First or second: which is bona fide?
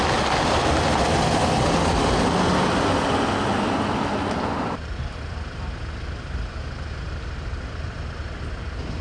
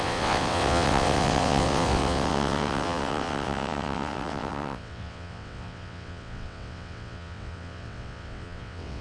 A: first